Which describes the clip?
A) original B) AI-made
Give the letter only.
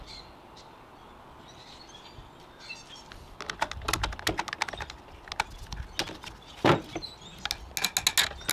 A